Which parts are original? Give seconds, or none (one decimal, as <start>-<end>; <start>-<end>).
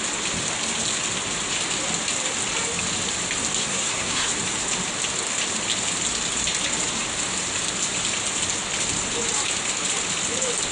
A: 0.0-3.6; 4.3-10.7